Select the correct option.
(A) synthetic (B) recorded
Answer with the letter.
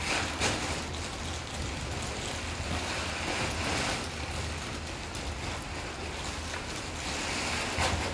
B